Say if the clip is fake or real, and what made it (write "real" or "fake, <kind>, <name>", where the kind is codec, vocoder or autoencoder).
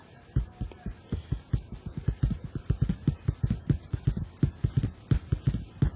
real